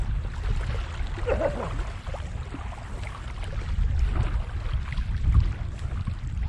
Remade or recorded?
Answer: recorded